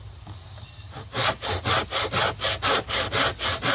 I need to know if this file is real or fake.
real